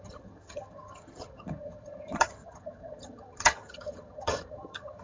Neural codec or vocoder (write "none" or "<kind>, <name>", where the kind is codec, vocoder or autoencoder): vocoder, HiFi-GAN